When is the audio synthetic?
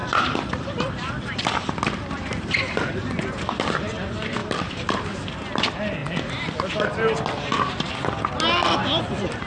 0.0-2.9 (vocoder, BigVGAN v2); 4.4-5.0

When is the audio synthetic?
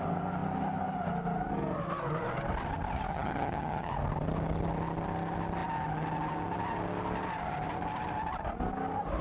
3.1-3.9 (vocoder, HiFi-GAN)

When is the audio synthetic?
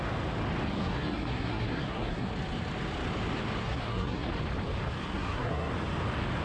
0.8-2.3 (codec, SNAC); 3.6-4.3; 5.0-5.7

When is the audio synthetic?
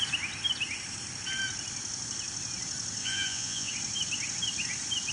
3.0-3.7 (vocoder, Vocos)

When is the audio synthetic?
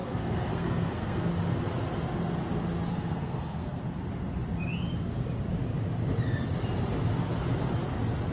0.0-1.3 (codec, SNAC); 2.9-3.8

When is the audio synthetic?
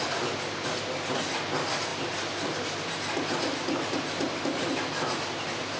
none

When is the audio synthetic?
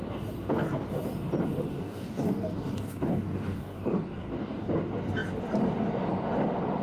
1.7-4.7 (codec, DAC)